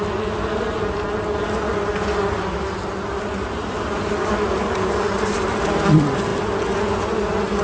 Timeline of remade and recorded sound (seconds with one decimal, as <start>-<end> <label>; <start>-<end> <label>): 0.0-7.6 recorded